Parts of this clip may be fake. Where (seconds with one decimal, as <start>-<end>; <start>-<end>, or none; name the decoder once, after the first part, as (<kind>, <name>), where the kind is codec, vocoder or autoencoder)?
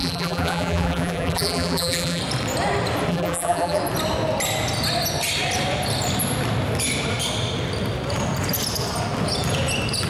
0.0-2.2 (vocoder, BigVGAN v2); 3.1-3.8